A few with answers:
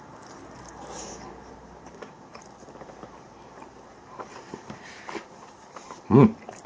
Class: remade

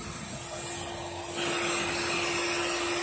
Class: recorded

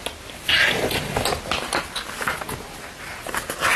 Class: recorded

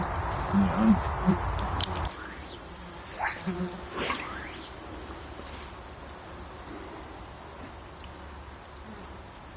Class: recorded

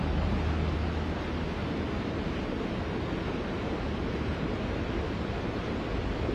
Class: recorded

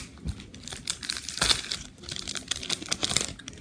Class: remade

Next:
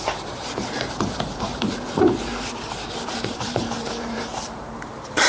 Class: remade